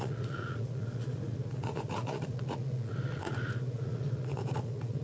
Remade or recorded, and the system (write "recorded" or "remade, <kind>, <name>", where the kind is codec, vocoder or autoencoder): remade, vocoder, Vocos